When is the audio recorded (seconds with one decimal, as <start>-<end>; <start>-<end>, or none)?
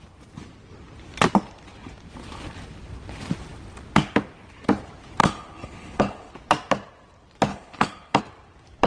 0.0-5.2; 6.3-7.5; 8.2-8.9